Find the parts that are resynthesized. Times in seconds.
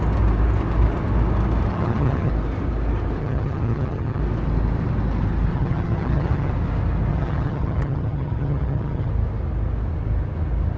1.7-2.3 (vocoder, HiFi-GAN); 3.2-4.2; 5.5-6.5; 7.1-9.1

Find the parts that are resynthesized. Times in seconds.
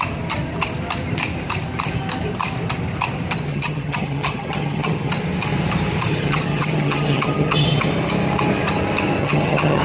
3.5-5.1 (vocoder, HiFi-GAN); 6.1-7.9; 9.2-9.8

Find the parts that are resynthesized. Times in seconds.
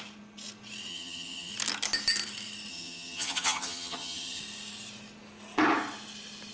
0.9-1.5 (vocoder, HiFi-GAN); 2.7-4.4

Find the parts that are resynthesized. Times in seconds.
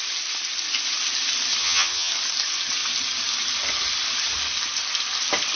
1.6-2.1 (vocoder, HiFi-GAN)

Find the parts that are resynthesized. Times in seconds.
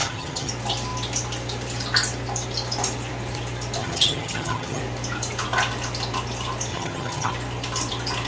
0.0-0.5 (vocoder, HiFi-GAN); 3.8-4.8; 6.7-7.3